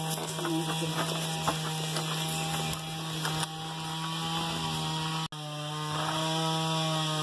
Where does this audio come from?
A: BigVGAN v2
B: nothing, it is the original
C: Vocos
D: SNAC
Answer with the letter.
B